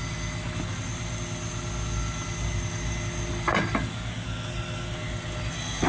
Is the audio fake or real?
real